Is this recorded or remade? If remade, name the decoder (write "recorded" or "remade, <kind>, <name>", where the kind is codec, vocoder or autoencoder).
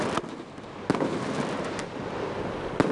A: recorded